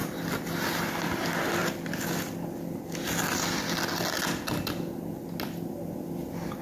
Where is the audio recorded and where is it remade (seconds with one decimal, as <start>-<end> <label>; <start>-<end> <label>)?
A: 0.0-6.6 recorded

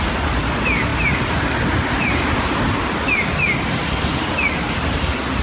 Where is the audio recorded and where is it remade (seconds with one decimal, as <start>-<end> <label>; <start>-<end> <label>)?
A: 0.0-5.4 recorded

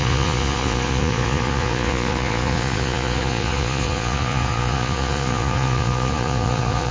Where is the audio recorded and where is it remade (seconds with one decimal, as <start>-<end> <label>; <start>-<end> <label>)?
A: 0.0-6.9 remade

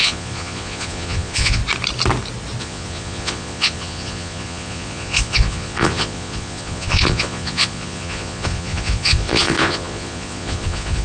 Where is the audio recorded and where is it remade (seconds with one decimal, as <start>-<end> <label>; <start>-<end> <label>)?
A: 0.0-1.6 remade; 1.6-2.6 recorded; 2.6-11.0 remade

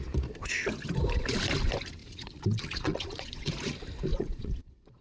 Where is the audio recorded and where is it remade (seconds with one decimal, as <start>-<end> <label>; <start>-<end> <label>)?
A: 0.0-2.0 recorded; 2.0-3.5 remade; 3.5-4.1 recorded; 4.1-5.0 remade

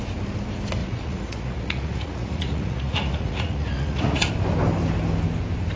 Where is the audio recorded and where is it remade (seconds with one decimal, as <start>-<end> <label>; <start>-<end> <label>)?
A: 0.0-0.8 recorded; 0.8-4.3 remade; 4.3-5.8 recorded

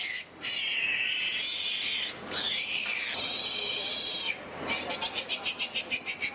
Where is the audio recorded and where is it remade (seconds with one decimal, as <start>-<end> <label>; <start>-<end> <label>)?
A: 0.0-6.3 recorded

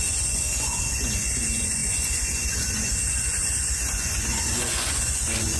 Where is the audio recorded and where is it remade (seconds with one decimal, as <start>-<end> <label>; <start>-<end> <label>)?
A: 0.0-5.6 remade